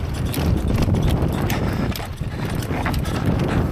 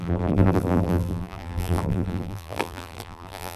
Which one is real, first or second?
first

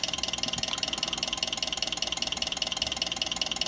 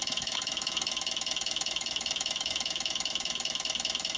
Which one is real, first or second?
first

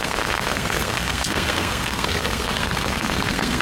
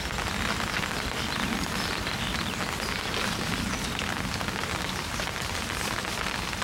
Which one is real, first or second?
second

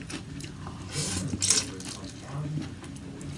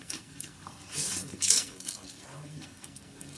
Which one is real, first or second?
first